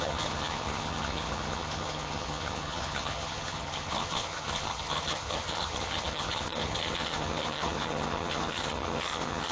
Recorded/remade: remade